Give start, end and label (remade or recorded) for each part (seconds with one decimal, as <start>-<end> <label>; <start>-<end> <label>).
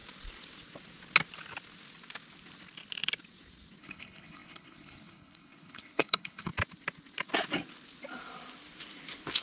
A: 0.0-3.8 recorded; 3.8-6.5 remade; 6.5-9.4 recorded